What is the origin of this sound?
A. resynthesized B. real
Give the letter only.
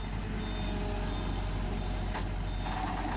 B